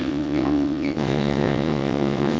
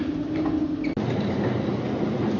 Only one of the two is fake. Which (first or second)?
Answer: first